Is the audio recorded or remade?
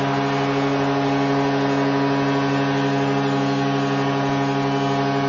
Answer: recorded